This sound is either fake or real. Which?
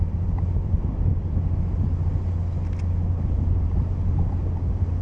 real